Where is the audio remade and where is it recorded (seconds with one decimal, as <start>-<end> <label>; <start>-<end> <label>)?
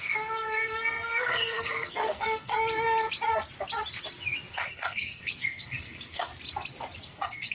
0.0-2.5 remade; 2.5-4.5 recorded; 4.5-6.3 remade; 6.3-7.0 recorded; 7.0-7.5 remade